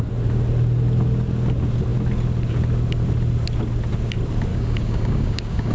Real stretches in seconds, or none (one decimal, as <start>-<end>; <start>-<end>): 0.0-4.5